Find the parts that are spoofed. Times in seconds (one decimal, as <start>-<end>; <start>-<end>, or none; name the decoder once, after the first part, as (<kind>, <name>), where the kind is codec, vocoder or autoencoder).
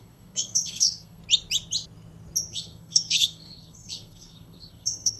0.0-1.2 (codec, SNAC); 2.5-5.2